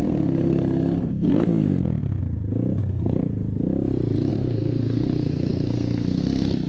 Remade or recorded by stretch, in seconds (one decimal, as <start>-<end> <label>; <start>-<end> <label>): 0.0-2.2 remade; 2.2-2.8 recorded; 2.8-3.2 remade; 3.2-4.3 recorded; 4.3-6.7 remade